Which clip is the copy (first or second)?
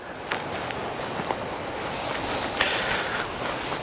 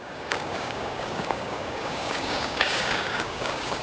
second